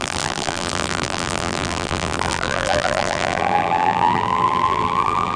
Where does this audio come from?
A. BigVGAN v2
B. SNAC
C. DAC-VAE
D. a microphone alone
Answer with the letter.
A